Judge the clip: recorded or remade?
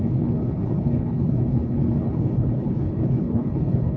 remade